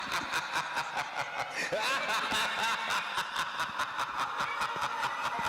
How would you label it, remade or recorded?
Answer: recorded